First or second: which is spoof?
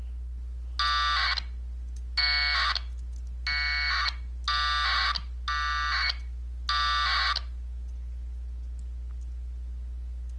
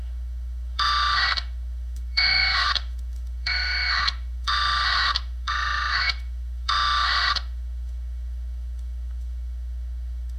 second